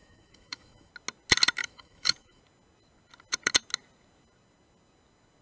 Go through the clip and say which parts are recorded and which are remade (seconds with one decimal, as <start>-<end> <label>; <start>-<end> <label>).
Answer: 0.0-0.9 remade; 0.9-1.6 recorded; 1.6-2.4 remade; 2.4-5.4 recorded